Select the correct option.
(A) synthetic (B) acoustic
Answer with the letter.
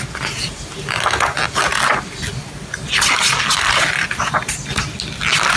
B